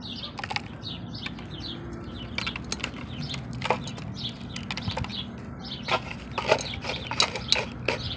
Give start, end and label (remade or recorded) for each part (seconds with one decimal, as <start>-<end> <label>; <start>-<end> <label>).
0.0-8.2 recorded